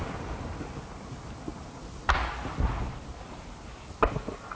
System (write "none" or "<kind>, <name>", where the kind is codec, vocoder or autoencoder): none